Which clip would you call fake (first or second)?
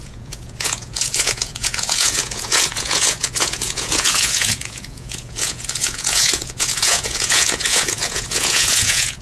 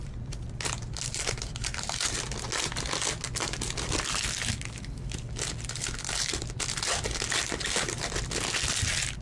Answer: first